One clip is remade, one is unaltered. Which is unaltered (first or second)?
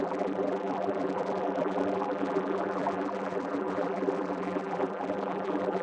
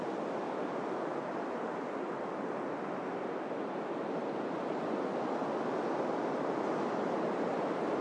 second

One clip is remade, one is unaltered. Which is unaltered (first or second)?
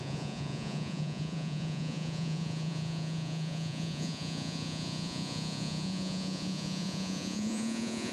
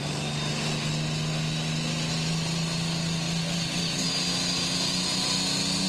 second